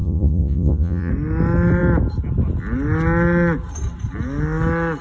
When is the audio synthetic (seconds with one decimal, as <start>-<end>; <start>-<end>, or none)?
0.0-1.1